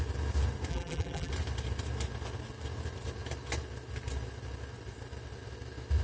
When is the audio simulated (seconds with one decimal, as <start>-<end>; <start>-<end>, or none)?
0.7-1.3